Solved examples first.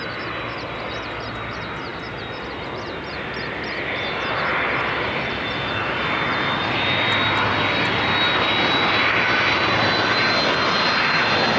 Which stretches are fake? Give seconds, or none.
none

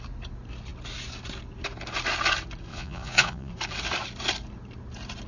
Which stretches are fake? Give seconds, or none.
2.7-3.5 (vocoder, Vocos)

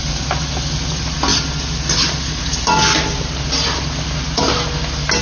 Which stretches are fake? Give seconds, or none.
none

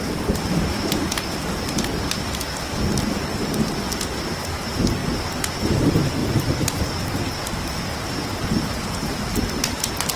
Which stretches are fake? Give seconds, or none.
6.2-7.2 (vocoder, BigVGAN v2)

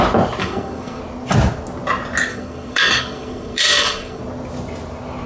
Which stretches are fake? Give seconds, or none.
0.4-1.0 (codec, SNAC); 2.3-4.2

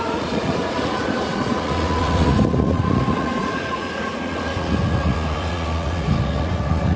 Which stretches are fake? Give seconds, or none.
0.0-7.0 (vocoder, Vocos)